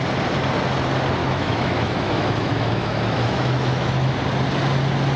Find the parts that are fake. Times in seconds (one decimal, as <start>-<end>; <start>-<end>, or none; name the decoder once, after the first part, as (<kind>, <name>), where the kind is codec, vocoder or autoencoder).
1.2-4.1 (autoencoder, DAC-VAE)